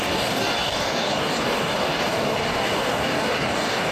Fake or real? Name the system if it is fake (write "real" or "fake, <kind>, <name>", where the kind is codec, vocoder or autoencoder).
fake, codec, DAC